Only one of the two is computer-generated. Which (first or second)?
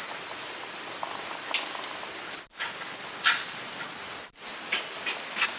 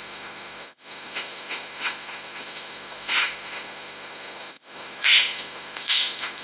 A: second